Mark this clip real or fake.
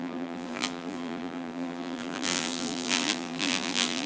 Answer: fake